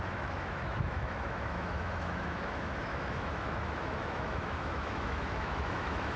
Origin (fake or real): fake